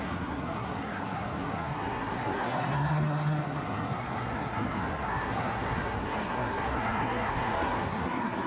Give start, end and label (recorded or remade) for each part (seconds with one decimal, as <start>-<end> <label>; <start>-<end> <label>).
0.0-8.5 remade